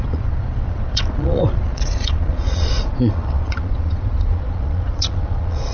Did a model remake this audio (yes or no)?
yes